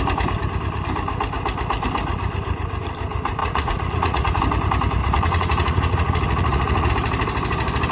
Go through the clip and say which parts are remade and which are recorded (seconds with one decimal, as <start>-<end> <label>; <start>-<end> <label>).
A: 0.0-3.4 recorded; 3.4-4.4 remade; 4.4-5.0 recorded; 5.0-6.9 remade; 6.9-7.9 recorded